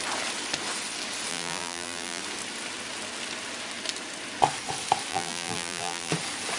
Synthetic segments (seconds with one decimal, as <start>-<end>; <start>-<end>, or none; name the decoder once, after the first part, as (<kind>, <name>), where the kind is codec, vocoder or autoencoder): 1.3-2.2 (vocoder, BigVGAN v2); 5.1-6.1